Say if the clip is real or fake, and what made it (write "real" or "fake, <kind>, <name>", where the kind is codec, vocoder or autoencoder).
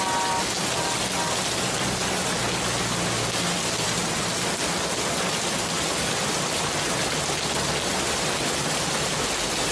real